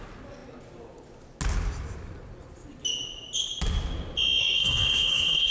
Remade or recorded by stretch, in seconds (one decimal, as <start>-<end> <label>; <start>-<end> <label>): 0.0-4.4 recorded; 4.4-5.5 remade